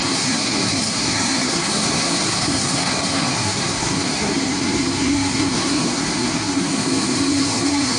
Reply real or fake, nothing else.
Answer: fake